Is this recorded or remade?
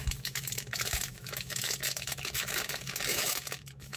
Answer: remade